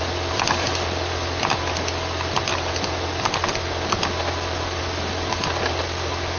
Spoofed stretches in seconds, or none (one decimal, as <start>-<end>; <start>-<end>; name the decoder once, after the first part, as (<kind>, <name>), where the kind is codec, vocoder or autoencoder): none